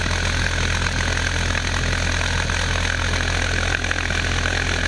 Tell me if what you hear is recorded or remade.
recorded